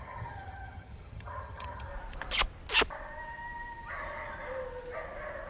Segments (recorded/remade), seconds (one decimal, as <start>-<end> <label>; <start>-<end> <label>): 0.0-1.9 remade; 1.9-5.5 recorded